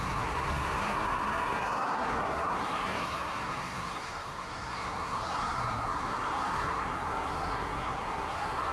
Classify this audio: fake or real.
fake